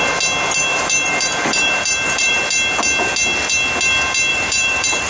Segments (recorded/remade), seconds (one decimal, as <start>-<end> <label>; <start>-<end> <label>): 0.0-0.7 recorded; 0.7-2.3 remade; 2.3-4.3 recorded; 4.3-5.1 remade

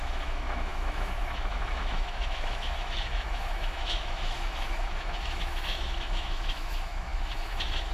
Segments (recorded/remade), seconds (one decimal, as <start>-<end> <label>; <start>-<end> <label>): 0.0-7.9 remade